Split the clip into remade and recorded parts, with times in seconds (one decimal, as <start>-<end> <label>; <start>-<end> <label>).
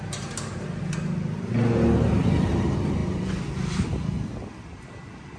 0.0-5.4 recorded